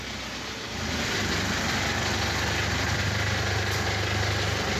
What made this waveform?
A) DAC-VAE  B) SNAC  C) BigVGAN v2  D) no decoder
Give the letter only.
D